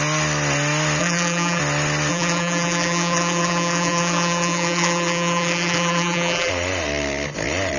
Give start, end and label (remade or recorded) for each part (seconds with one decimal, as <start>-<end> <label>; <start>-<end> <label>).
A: 0.0-1.0 recorded; 1.0-1.6 remade; 1.6-2.1 recorded; 2.1-6.5 remade; 6.5-7.8 recorded